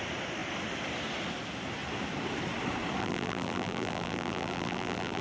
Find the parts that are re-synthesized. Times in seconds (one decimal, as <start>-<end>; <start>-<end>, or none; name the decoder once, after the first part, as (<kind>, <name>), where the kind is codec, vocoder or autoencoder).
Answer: 3.0-5.2 (vocoder, BigVGAN v2)